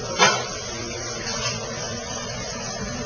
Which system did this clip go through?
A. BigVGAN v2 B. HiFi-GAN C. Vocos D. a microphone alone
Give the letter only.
A